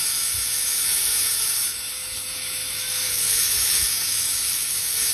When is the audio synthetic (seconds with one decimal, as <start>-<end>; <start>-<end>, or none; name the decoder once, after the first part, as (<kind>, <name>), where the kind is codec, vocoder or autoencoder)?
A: 0.0-5.1 (autoencoder, DAC-VAE)